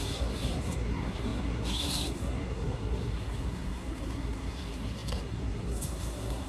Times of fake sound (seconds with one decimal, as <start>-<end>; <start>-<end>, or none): 0.0-6.5